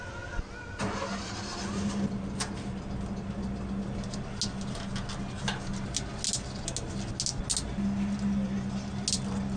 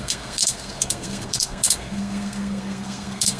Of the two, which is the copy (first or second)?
second